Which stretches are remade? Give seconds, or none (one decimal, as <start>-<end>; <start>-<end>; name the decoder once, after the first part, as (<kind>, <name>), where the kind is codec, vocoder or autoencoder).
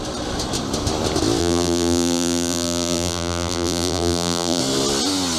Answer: 1.4-4.6 (vocoder, BigVGAN v2)